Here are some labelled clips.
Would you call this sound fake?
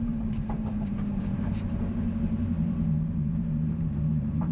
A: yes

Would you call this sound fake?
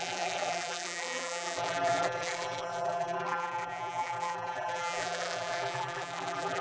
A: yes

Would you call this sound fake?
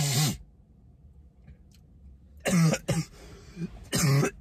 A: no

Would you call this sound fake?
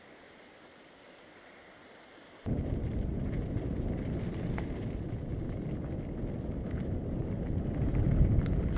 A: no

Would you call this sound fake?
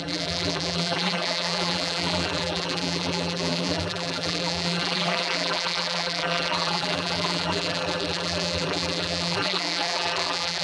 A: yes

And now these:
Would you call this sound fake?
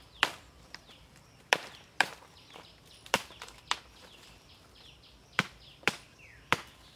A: yes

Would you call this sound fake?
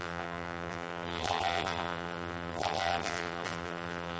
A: yes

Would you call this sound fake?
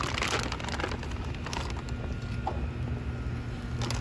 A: no